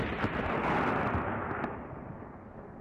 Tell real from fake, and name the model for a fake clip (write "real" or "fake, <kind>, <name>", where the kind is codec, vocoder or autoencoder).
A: real